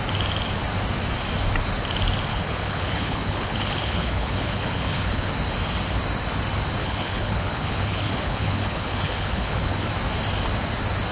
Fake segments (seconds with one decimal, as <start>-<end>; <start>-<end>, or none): 2.3-5.3; 6.8-9.9